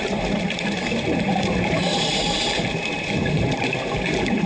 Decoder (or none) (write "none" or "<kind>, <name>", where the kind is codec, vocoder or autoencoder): vocoder, BigVGAN v2